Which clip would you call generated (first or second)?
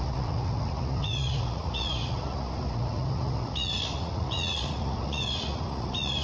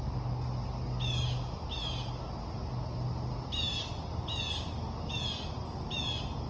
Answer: first